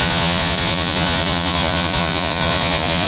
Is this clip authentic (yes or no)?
no